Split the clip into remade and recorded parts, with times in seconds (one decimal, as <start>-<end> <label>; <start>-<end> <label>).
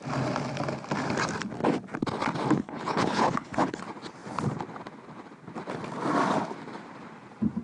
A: 0.0-2.6 recorded; 2.6-3.8 remade; 3.8-7.6 recorded